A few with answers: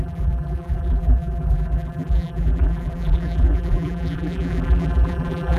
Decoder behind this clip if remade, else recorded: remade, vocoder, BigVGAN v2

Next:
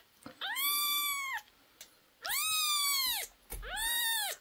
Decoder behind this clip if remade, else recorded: recorded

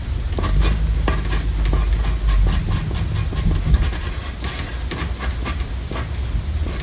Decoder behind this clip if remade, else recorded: recorded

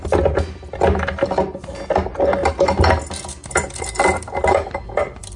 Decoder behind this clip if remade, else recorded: recorded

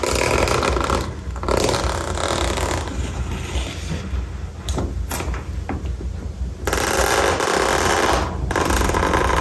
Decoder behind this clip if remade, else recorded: recorded